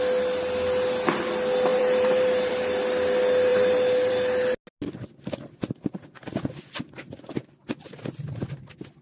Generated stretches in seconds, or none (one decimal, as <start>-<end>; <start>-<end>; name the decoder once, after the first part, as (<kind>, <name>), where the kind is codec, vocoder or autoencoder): 1.7-2.5 (vocoder, BigVGAN v2)